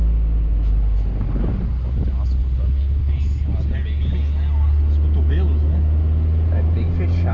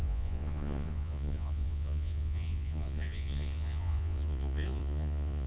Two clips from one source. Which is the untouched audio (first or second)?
first